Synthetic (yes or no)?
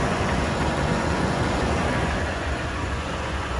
yes